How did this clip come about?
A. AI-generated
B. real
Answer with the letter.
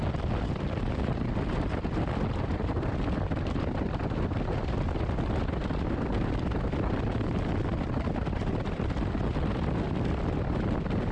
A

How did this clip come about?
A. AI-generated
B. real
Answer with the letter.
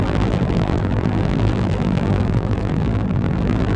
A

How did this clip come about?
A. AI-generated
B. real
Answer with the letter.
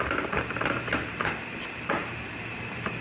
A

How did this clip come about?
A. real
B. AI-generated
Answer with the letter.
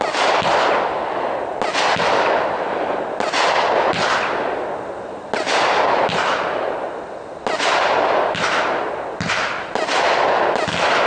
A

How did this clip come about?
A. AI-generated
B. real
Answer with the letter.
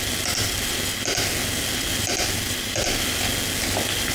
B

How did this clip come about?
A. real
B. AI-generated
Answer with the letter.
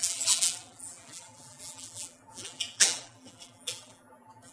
B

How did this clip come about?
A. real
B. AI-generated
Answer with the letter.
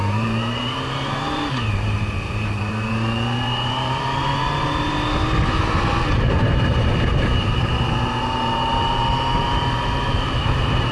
B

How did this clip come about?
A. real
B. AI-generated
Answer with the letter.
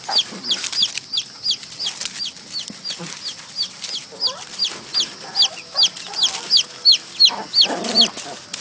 A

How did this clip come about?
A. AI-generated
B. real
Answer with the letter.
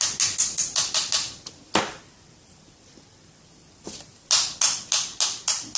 B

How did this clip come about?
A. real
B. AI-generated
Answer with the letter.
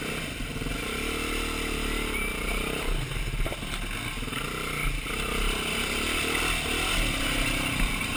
A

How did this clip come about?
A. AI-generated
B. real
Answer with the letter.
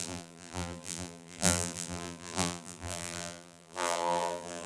A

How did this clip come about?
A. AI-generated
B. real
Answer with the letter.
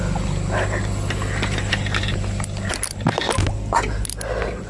B